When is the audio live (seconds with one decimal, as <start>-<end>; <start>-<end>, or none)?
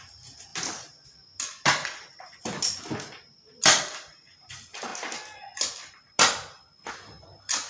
0.0-7.7